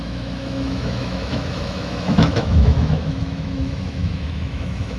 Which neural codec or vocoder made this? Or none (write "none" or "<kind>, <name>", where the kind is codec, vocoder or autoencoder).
autoencoder, DAC-VAE